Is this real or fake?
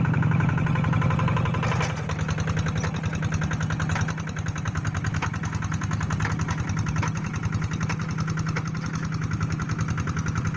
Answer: real